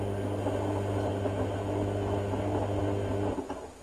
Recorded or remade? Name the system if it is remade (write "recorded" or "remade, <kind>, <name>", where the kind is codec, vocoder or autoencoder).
recorded